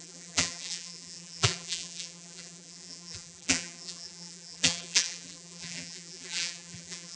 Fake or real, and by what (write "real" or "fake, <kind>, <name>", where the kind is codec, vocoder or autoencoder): fake, vocoder, BigVGAN v2